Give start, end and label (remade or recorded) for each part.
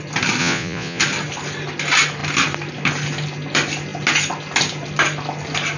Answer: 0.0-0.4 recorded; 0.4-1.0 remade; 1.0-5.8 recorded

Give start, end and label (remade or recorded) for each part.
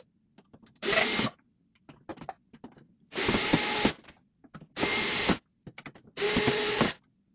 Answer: 0.0-7.3 recorded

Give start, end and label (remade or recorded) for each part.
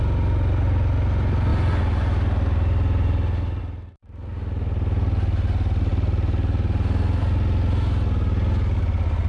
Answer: 0.0-9.3 recorded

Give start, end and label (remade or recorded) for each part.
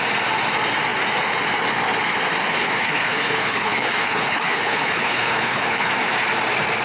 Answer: 0.0-2.4 recorded; 2.4-5.9 remade; 5.9-6.8 recorded